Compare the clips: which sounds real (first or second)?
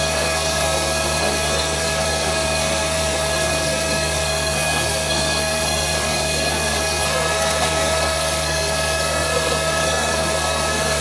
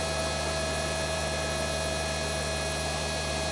second